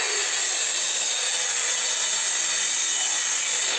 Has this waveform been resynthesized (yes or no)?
no